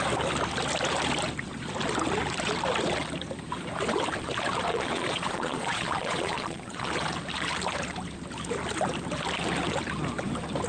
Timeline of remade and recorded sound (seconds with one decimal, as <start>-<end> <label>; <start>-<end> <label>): 0.0-4.7 recorded; 4.7-6.9 remade; 6.9-10.7 recorded